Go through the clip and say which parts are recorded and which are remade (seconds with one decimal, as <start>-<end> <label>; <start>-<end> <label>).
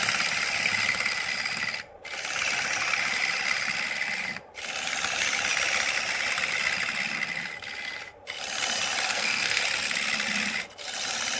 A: 0.0-9.1 recorded; 9.1-9.6 remade; 9.6-11.4 recorded